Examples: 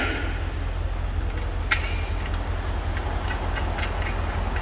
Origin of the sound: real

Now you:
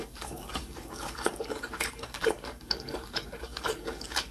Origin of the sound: fake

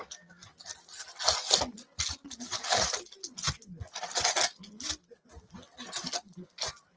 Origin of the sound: real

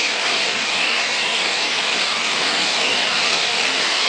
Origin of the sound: fake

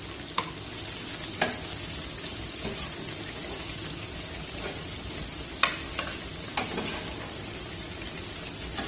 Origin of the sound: real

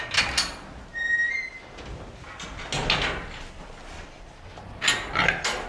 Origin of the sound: real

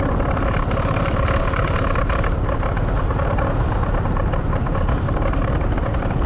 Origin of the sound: real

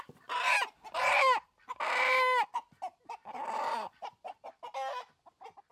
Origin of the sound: real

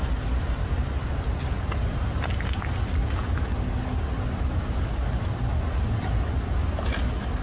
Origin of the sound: real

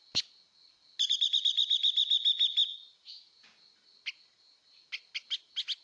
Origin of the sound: real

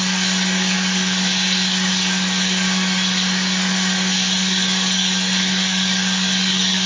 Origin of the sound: fake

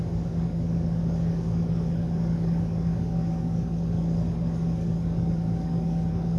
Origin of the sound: fake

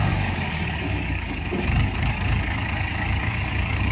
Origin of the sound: fake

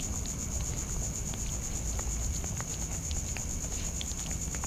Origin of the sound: real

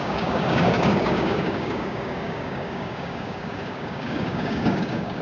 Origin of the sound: fake